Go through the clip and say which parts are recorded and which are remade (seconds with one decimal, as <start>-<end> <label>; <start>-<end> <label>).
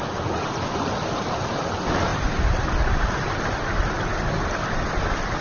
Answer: 0.0-5.4 recorded